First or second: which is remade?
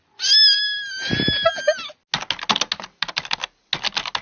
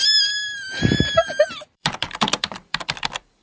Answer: second